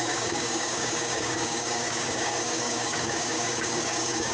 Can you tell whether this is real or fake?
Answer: fake